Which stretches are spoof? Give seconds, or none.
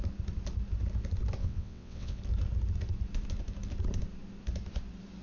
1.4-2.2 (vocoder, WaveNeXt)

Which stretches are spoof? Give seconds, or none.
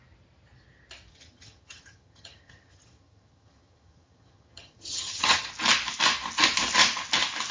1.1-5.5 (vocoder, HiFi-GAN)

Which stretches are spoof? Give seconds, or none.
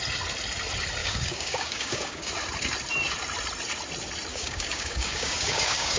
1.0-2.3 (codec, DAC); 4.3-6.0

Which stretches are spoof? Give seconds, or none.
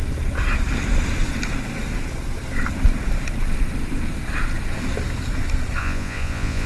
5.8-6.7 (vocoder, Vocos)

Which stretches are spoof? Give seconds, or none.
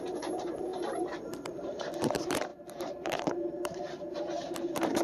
0.0-5.0 (vocoder, BigVGAN v2)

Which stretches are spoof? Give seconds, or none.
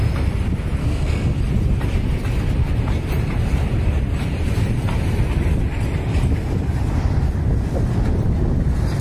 0.8-1.4 (codec, SNAC)